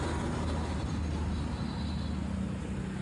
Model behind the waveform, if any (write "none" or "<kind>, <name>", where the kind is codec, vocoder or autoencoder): none